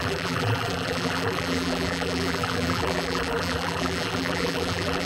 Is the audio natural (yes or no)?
no